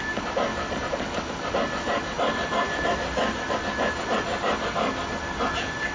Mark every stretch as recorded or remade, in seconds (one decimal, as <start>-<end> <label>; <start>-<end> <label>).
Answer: 0.0-5.9 recorded